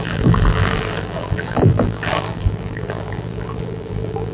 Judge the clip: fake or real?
fake